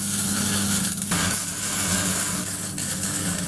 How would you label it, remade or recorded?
remade